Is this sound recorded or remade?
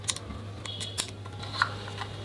recorded